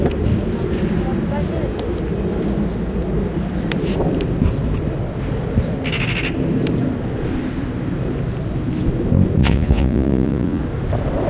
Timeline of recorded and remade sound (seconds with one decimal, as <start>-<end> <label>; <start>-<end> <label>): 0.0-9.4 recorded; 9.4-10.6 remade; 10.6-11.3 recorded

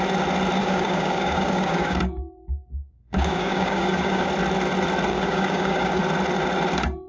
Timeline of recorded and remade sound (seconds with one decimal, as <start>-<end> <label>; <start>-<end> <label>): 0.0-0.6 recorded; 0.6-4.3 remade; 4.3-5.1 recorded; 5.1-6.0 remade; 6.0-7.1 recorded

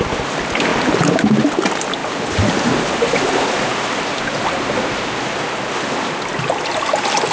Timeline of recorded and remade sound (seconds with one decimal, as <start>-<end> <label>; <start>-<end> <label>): 0.0-7.3 recorded

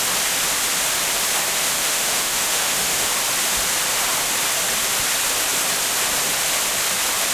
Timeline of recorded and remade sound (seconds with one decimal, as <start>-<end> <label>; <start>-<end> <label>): 0.0-1.8 recorded; 1.8-3.1 remade; 3.1-7.3 recorded